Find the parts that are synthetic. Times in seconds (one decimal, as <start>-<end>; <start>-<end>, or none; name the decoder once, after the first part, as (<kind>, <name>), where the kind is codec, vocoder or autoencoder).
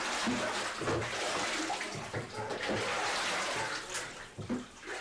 1.0-1.5 (vocoder, BigVGAN v2)